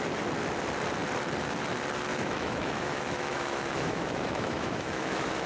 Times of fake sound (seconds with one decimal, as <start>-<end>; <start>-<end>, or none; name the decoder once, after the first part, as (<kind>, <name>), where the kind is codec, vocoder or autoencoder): 2.1-5.5 (autoencoder, DAC-VAE)